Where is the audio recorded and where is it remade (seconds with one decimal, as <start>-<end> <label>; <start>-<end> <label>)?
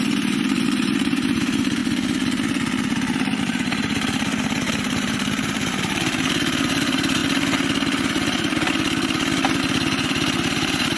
0.0-1.8 remade; 1.8-3.4 recorded; 3.4-7.2 remade; 7.2-9.6 recorded; 9.6-11.0 remade